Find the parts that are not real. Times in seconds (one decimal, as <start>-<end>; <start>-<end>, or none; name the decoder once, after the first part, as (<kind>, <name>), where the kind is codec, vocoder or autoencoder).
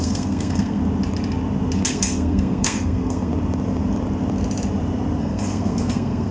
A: 0.0-0.8 (codec, SNAC); 1.9-3.3; 5.2-6.3